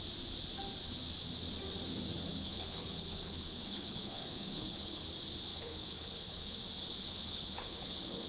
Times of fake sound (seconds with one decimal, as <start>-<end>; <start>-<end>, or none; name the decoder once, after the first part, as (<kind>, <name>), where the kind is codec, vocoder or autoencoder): 2.3-5.0 (codec, HILCodec); 5.5-6.6; 7.0-8.3